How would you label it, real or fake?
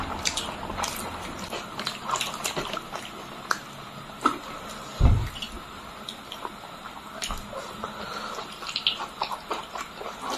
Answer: real